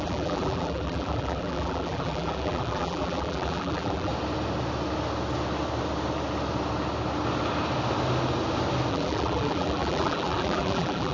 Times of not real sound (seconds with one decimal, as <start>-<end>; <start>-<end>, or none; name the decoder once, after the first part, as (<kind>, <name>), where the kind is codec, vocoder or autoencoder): 0.0-4.1 (vocoder, BigVGAN v2); 8.9-11.1